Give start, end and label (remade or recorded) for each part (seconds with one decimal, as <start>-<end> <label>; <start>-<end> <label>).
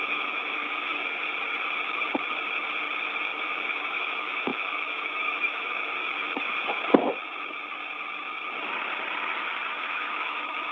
0.0-0.9 remade; 0.9-3.4 recorded; 3.4-5.9 remade; 5.9-9.8 recorded; 9.8-10.7 remade